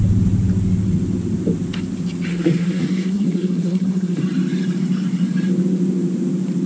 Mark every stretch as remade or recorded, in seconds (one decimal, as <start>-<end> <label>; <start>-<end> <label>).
0.0-2.3 recorded; 2.3-4.2 remade; 4.2-6.7 recorded